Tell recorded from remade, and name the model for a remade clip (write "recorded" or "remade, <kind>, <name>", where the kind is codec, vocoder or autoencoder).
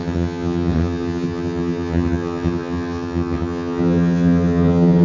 remade, vocoder, HiFi-GAN